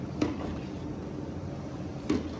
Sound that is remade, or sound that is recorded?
recorded